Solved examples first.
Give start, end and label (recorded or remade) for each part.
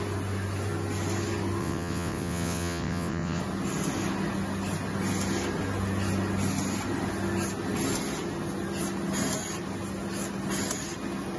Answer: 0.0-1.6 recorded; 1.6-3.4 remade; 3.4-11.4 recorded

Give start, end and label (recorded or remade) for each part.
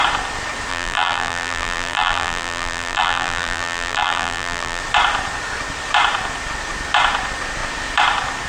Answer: 0.0-0.7 recorded; 0.7-4.8 remade; 4.8-8.5 recorded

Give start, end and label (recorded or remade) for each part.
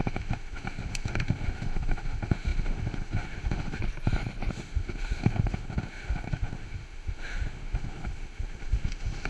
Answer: 0.0-3.8 remade; 3.8-4.5 recorded; 4.5-9.3 remade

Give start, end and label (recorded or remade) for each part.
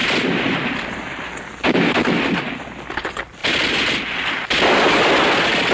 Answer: 0.0-5.7 recorded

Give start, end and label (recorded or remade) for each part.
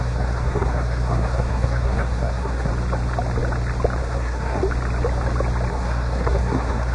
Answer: 0.0-2.7 remade; 2.7-4.0 recorded; 4.0-4.6 remade; 4.6-5.7 recorded; 5.7-6.9 remade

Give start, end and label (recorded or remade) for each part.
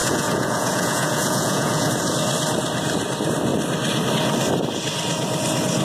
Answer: 0.0-1.9 remade; 1.9-5.8 recorded